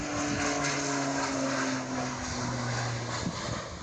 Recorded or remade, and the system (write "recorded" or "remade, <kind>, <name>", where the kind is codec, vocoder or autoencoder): recorded